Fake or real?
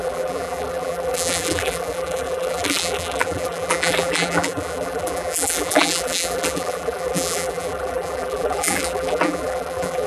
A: fake